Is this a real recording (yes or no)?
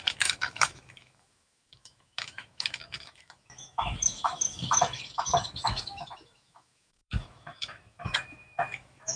no